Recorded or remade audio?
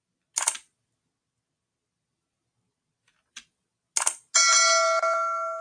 recorded